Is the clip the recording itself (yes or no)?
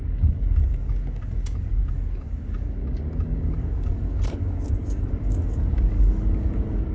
no